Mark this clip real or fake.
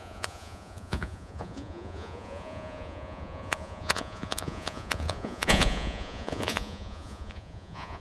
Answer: fake